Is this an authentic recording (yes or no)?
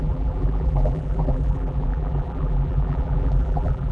no